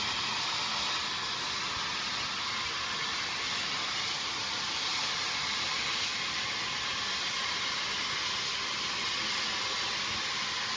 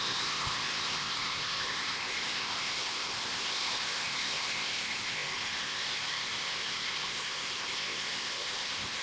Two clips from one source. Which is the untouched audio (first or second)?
first